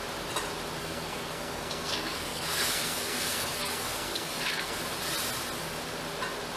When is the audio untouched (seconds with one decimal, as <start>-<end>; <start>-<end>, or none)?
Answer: 0.0-0.8; 4.8-6.6